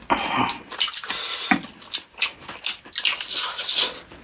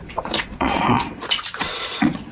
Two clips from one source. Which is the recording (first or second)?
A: first